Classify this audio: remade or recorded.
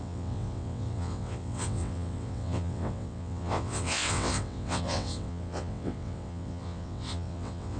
remade